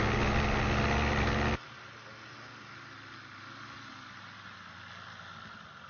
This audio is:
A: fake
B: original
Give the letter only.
B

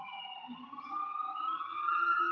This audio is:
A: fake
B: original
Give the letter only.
A